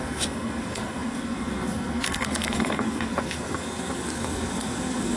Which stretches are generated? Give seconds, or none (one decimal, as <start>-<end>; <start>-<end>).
0.0-5.2